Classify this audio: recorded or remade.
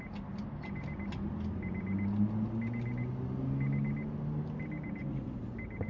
recorded